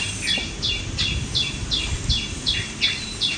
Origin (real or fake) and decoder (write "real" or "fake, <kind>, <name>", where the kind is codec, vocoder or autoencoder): fake, vocoder, BigVGAN v2